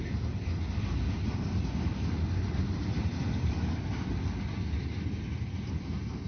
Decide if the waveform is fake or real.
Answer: fake